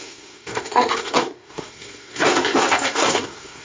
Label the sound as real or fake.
fake